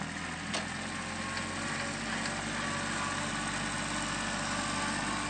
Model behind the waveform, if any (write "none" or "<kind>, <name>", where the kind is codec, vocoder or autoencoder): none